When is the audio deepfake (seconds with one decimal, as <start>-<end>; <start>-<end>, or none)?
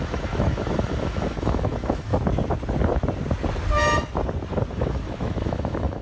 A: 0.0-2.1; 4.7-6.0